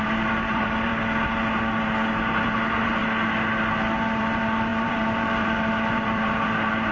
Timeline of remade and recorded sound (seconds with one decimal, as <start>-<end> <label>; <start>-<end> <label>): 0.0-0.9 remade; 0.9-2.1 recorded; 2.1-3.0 remade; 3.0-4.2 recorded; 4.2-6.9 remade